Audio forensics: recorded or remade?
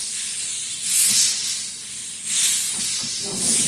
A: recorded